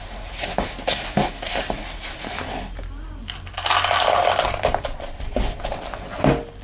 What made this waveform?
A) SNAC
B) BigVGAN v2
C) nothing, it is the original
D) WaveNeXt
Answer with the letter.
C